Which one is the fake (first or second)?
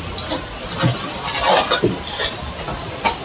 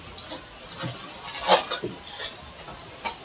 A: first